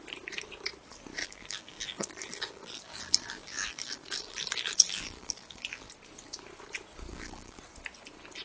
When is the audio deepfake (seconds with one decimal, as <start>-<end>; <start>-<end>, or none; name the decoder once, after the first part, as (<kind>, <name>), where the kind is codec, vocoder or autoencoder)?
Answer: 1.2-5.9 (vocoder, BigVGAN v2); 7.1-7.6